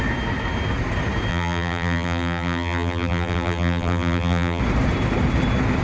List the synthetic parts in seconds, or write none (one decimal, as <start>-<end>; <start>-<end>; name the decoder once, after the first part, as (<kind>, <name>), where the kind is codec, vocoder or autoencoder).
1.3-4.6 (vocoder, BigVGAN v2)